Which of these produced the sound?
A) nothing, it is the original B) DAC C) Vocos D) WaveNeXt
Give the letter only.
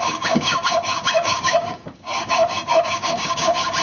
B